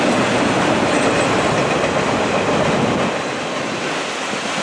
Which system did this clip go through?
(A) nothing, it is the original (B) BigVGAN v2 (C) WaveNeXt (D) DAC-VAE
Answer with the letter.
A